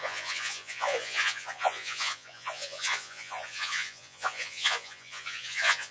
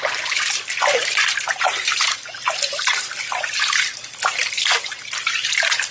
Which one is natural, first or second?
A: second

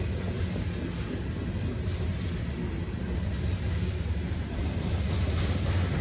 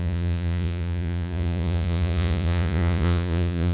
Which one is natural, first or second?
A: first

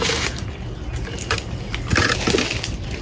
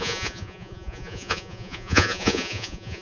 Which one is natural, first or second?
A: first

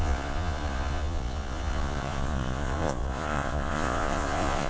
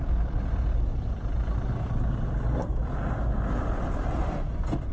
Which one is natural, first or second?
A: second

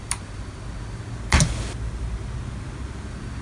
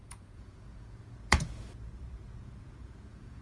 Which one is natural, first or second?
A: first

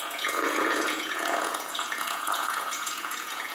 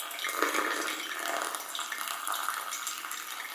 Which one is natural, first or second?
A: second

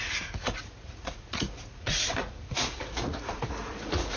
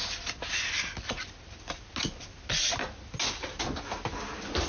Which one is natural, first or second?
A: second